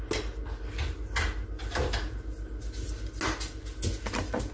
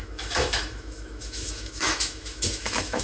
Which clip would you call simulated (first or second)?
second